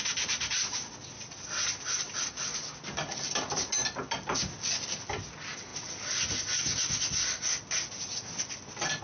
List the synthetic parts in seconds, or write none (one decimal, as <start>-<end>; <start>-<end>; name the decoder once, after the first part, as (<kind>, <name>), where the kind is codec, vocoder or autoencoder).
none